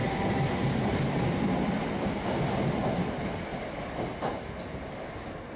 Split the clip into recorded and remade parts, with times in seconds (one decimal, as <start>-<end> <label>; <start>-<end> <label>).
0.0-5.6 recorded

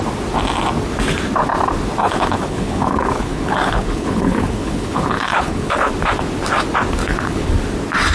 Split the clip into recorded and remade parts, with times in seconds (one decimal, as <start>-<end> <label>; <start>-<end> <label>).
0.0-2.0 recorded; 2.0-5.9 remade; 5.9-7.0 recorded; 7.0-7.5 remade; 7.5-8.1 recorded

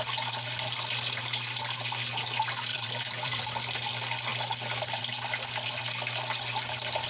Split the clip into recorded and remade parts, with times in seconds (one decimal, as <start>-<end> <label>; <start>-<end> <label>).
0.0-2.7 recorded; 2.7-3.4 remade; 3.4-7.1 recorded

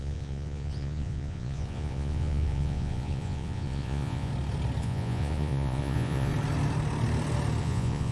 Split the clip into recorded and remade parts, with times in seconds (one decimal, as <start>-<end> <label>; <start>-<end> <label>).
0.0-4.3 remade; 4.3-4.8 recorded; 4.8-6.3 remade; 6.3-7.6 recorded; 7.6-8.1 remade